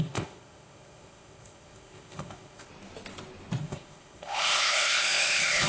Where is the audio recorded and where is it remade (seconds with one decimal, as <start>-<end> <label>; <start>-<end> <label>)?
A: 0.0-2.7 remade; 2.7-3.6 recorded; 3.6-5.7 remade